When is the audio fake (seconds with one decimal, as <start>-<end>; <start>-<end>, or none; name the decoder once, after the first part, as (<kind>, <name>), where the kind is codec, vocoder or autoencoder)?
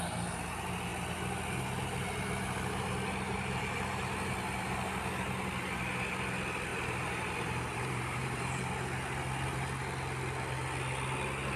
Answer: 6.7-8.6 (vocoder, BigVGAN v2)